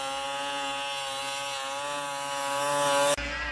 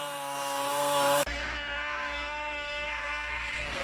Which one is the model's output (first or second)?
second